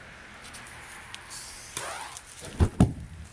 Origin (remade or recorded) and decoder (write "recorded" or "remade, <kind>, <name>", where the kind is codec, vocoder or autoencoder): recorded